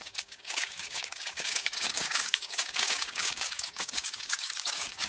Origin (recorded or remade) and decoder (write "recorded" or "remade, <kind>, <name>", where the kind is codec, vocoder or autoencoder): remade, codec, DAC